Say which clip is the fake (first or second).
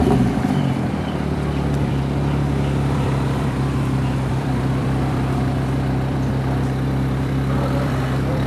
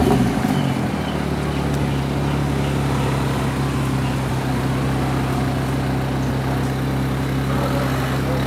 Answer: first